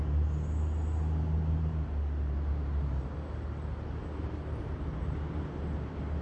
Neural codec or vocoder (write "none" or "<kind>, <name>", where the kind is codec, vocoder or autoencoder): none